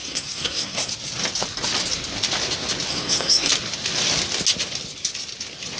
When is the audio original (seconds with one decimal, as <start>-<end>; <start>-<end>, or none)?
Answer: 0.9-2.9; 3.5-5.8